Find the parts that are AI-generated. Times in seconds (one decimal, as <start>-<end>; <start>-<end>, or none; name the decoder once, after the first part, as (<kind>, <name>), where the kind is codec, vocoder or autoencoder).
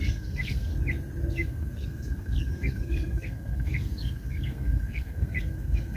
0.0-0.7 (codec, SNAC); 1.3-6.0